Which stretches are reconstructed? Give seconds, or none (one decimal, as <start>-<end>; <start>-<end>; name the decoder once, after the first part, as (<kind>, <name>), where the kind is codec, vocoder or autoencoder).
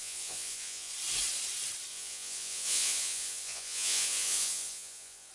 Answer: 0.0-0.9 (vocoder, Vocos); 1.9-5.3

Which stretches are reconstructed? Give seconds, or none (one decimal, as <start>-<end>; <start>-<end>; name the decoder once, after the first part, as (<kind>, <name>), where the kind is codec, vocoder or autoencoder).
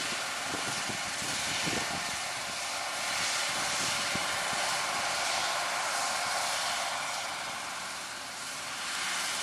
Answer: none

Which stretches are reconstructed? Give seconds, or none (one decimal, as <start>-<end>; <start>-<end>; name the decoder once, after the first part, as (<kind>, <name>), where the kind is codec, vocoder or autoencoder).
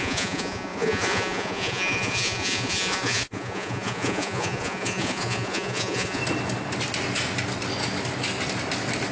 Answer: 0.0-6.2 (vocoder, Vocos)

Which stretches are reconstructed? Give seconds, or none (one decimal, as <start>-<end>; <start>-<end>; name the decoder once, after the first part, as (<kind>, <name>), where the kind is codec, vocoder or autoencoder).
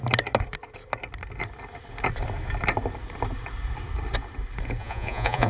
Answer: 4.8-5.5 (vocoder, Vocos)